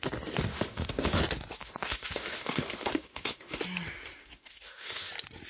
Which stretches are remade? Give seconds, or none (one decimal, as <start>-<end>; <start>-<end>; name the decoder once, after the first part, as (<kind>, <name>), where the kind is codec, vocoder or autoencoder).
0.5-1.2 (autoencoder, DAC-VAE); 1.6-3.6; 4.2-5.1